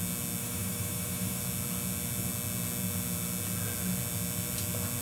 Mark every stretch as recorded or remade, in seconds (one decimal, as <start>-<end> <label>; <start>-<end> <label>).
0.0-0.4 recorded; 0.4-1.4 remade; 1.4-5.0 recorded